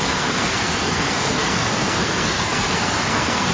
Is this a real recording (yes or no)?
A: no